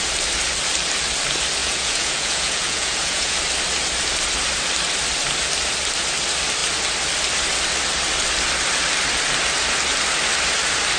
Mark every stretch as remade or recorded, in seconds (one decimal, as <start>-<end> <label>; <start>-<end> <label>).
0.0-1.6 recorded; 1.6-3.4 remade; 3.4-11.0 recorded